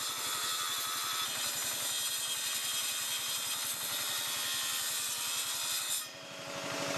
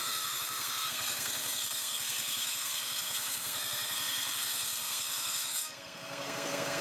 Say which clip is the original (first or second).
first